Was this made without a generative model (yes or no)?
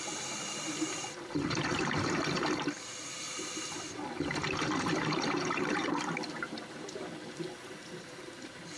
no